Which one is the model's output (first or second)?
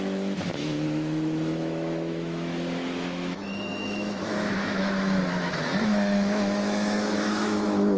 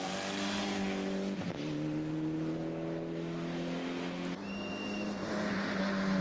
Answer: first